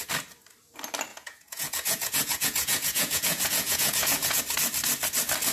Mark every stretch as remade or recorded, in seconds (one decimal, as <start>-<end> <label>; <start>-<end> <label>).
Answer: 0.0-1.1 recorded; 1.1-4.4 remade; 4.4-5.5 recorded